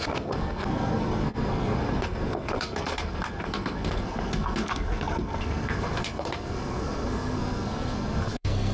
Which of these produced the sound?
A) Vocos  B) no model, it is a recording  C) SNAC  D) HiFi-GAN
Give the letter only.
C